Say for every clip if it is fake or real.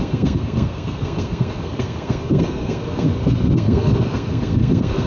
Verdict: fake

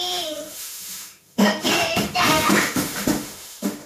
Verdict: fake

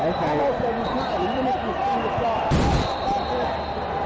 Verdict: real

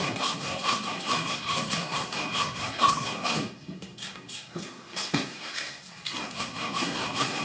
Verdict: fake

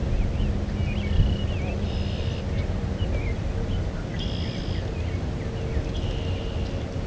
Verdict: real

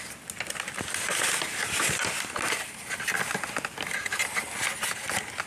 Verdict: real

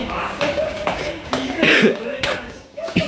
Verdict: fake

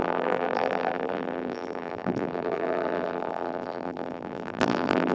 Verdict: fake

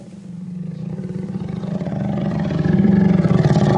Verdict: fake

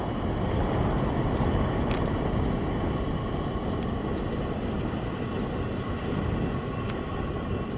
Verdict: real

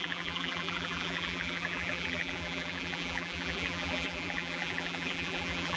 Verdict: fake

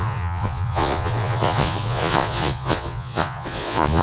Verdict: fake